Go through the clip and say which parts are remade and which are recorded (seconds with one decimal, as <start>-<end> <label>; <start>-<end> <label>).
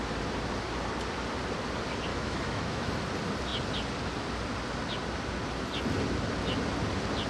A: 0.0-2.1 recorded; 2.1-2.9 remade; 2.9-7.3 recorded